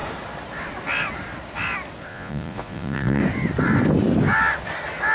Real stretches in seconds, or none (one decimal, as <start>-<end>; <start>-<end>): 0.0-2.1; 3.2-5.1